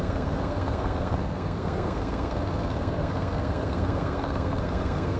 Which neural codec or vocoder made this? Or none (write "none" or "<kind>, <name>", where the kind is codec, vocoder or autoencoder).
codec, SNAC